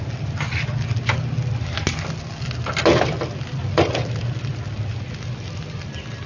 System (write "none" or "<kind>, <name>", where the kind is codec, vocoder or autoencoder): none